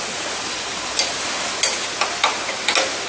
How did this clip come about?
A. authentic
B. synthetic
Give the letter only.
A